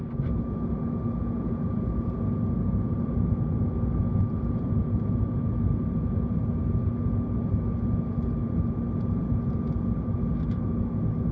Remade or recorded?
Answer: recorded